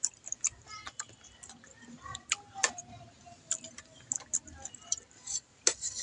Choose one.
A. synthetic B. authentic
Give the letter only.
A